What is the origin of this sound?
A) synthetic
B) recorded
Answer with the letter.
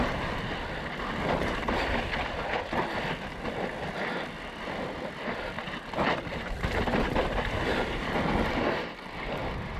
A